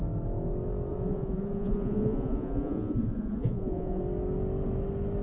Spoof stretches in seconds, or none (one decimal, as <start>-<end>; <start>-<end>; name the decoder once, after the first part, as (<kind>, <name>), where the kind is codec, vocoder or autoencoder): 0.9-4.0 (vocoder, Vocos)